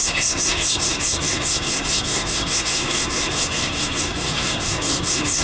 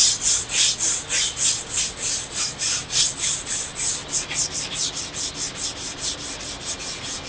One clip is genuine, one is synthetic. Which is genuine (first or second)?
second